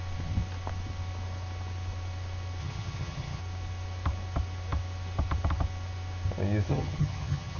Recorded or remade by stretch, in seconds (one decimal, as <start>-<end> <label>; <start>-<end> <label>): 0.0-2.6 recorded; 2.6-3.4 remade; 3.4-6.7 recorded; 6.7-7.6 remade